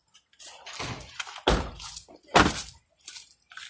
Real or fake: real